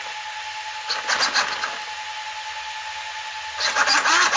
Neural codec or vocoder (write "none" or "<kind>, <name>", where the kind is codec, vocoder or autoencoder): none